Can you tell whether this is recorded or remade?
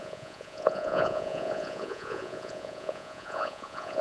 remade